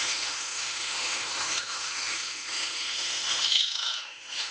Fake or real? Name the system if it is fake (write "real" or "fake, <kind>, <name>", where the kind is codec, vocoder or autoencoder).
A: fake, autoencoder, DAC-VAE